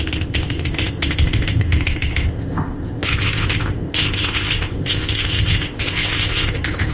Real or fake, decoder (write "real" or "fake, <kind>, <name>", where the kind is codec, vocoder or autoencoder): fake, codec, ZipCodec